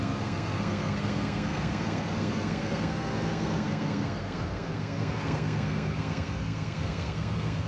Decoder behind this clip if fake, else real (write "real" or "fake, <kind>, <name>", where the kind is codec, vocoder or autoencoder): fake, codec, SNAC